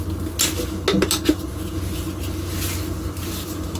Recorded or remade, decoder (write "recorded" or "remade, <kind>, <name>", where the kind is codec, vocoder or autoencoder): recorded